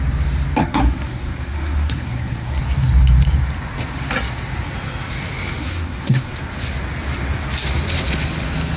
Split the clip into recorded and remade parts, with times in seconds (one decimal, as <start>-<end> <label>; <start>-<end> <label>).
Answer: 0.0-0.6 recorded; 0.6-2.6 remade; 2.6-5.6 recorded; 5.6-6.3 remade; 6.3-8.8 recorded

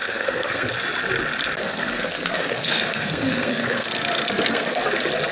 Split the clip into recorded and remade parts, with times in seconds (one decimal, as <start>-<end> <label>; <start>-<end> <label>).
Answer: 0.0-0.7 remade; 0.7-1.6 recorded; 1.6-4.8 remade; 4.8-5.3 recorded

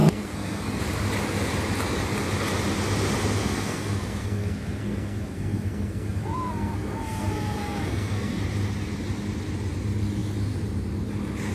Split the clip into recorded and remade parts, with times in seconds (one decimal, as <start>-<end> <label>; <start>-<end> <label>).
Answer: 0.0-0.8 remade; 0.8-3.4 recorded; 3.4-8.4 remade; 8.4-11.5 recorded

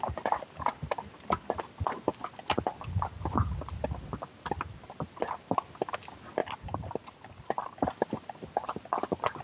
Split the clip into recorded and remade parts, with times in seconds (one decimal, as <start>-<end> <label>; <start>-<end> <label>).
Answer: 0.0-9.4 recorded